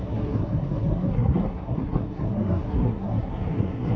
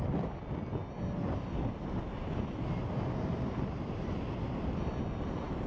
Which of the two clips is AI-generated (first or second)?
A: first